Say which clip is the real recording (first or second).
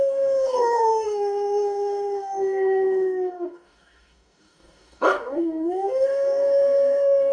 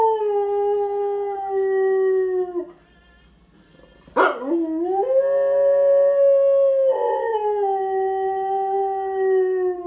second